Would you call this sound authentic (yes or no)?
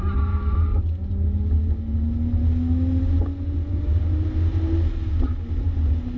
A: yes